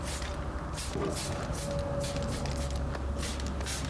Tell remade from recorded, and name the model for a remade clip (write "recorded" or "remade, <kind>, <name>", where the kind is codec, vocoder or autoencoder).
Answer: recorded